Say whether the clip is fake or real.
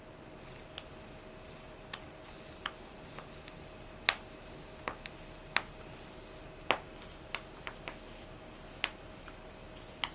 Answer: real